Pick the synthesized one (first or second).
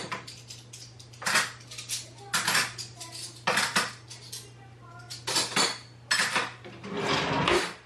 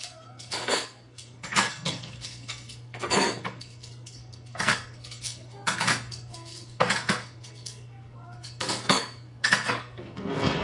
second